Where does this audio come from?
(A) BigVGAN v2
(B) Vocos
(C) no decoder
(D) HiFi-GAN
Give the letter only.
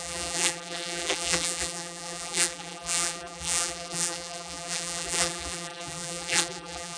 A